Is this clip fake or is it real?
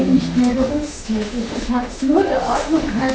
fake